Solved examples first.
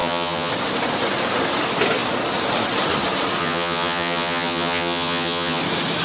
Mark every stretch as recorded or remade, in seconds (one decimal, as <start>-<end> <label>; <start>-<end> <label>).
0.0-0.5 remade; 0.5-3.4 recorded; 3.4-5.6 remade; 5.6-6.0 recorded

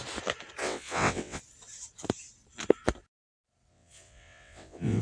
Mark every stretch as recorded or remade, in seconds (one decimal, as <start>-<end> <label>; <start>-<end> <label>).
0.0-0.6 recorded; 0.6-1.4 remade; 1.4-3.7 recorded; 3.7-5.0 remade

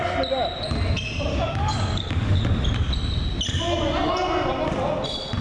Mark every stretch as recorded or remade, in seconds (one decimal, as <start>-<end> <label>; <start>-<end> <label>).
0.0-1.3 recorded; 1.3-2.4 remade; 2.4-5.4 recorded

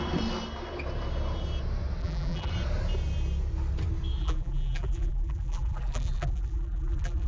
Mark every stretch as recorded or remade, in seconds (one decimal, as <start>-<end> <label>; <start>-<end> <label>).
0.0-2.0 recorded; 2.0-2.5 remade; 2.5-4.2 recorded; 4.2-7.3 remade

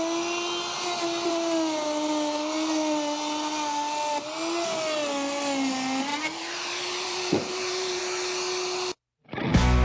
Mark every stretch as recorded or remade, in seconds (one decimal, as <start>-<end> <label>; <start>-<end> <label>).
0.0-6.1 recorded; 6.1-8.0 remade; 8.0-9.8 recorded

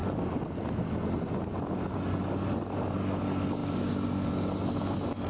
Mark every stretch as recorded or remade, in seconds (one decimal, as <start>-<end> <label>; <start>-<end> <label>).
0.0-5.3 recorded

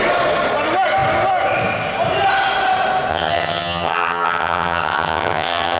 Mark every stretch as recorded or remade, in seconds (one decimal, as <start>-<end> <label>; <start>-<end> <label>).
0.0-3.1 recorded; 3.1-5.8 remade